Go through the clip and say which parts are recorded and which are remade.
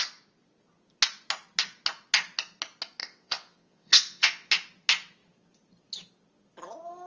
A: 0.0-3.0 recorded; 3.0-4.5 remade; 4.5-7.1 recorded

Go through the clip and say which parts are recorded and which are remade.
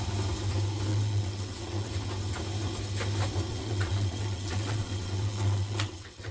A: 0.0-0.9 recorded; 0.9-1.9 remade; 1.9-3.5 recorded; 3.5-6.3 remade